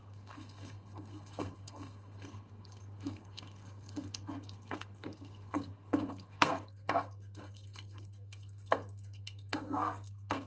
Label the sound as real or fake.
fake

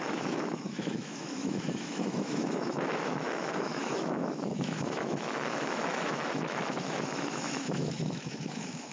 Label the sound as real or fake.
fake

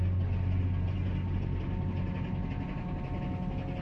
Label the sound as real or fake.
real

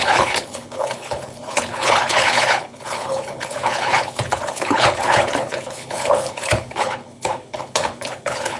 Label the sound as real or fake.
fake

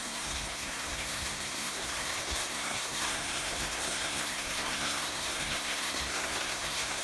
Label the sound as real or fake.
fake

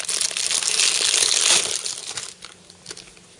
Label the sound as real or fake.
real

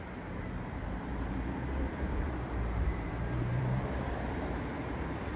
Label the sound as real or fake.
fake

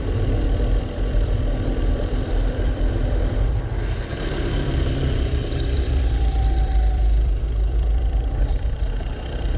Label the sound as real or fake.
fake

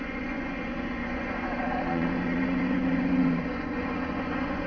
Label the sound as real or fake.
fake